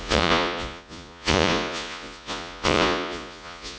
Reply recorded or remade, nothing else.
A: remade